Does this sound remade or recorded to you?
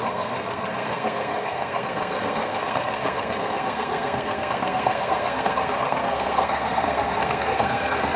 remade